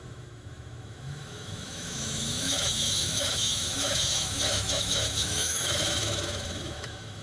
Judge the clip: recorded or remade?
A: remade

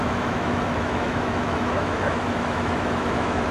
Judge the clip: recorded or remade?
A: remade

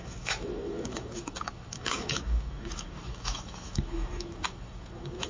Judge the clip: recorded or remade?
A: remade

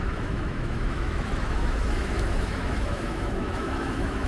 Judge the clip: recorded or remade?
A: remade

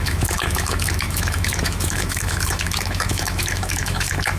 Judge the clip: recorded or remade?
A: remade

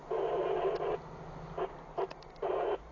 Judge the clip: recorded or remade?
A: recorded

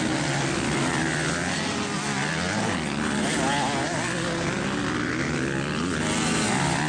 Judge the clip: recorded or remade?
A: recorded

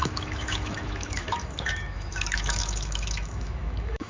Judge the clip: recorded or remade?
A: remade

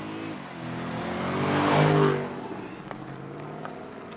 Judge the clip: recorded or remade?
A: recorded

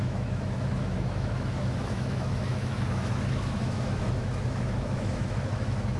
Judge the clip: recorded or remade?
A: remade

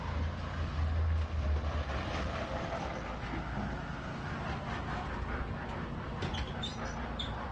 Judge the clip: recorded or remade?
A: recorded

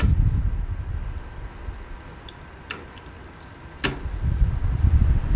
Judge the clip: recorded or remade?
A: recorded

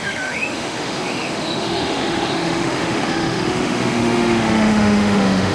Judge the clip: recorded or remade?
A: remade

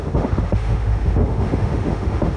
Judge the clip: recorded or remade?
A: remade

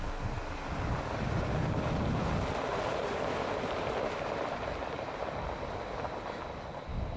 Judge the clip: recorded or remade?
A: recorded